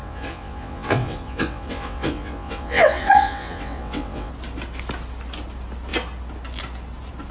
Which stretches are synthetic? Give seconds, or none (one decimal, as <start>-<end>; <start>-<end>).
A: 0.0-4.3